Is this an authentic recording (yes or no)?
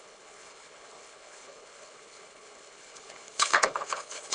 no